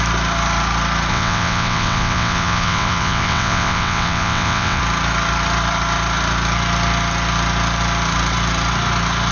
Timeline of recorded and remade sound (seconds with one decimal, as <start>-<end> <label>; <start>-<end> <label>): 0.0-1.1 recorded; 1.1-4.8 remade; 4.8-9.3 recorded